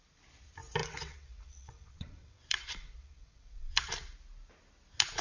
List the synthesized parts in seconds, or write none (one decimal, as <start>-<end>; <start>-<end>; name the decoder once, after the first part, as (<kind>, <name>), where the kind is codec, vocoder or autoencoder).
0.8-3.9 (vocoder, WaveNeXt)